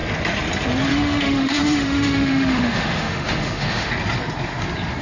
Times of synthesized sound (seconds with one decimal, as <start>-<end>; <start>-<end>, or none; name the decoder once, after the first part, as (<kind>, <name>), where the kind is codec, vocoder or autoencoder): 0.9-3.9 (autoencoder, DAC-VAE)